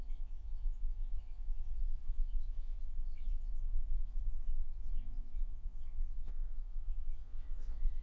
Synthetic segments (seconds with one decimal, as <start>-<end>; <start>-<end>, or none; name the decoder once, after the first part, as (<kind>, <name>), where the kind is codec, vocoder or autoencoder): 0.0-8.0 (vocoder, WaveNeXt)